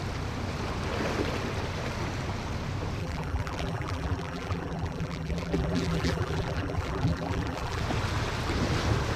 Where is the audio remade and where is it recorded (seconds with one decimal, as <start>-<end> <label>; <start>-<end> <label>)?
0.0-3.0 recorded; 3.0-7.8 remade; 7.8-9.2 recorded